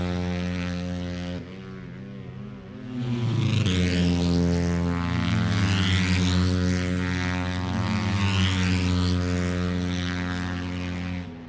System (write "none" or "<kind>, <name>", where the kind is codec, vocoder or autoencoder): none